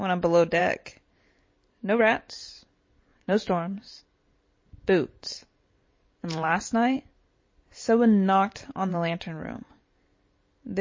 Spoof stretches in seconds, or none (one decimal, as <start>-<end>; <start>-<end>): 3.1-4.0; 5.3-7.0; 8.9-10.0